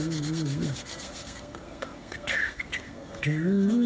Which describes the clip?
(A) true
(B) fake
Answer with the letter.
B